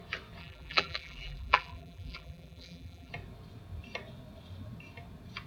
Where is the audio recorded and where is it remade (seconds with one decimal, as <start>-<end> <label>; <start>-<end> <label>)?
0.0-0.4 recorded; 0.4-3.1 remade; 3.1-5.5 recorded

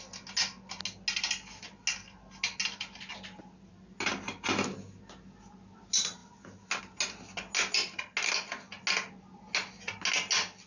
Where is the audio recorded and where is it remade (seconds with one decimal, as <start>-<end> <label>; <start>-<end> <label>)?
0.0-10.7 recorded

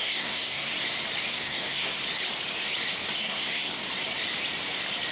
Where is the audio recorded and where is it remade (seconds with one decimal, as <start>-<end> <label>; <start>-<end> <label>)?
0.0-0.7 remade; 0.7-1.3 recorded; 1.3-2.0 remade; 2.0-3.2 recorded; 3.2-3.7 remade; 3.7-5.1 recorded